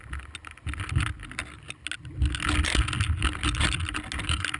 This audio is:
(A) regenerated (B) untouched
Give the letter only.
B